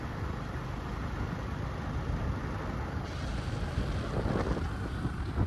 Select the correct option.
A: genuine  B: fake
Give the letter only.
A